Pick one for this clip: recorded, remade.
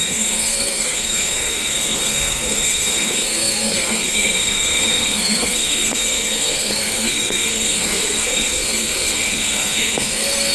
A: remade